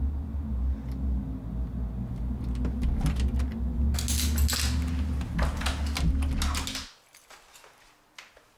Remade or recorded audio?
recorded